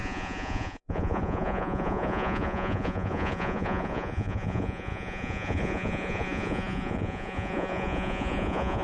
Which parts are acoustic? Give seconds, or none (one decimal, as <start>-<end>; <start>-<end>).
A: none